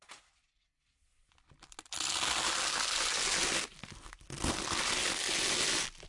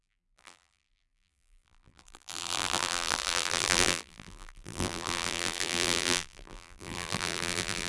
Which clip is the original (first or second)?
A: first